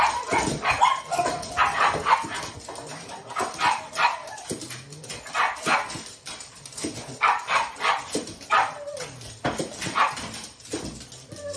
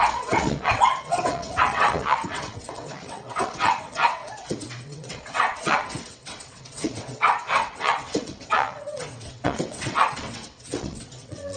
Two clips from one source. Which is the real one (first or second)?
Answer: first